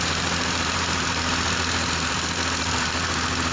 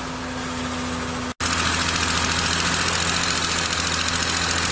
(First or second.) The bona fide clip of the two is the second